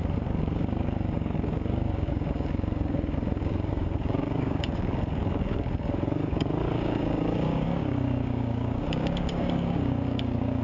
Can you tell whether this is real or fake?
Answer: fake